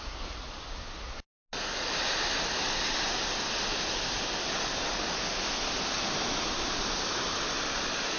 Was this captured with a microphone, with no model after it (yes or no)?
yes